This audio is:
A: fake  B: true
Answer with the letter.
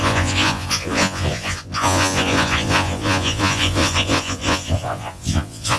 A